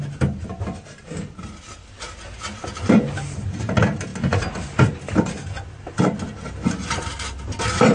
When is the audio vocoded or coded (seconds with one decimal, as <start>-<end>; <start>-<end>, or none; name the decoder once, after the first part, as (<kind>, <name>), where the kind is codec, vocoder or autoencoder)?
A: none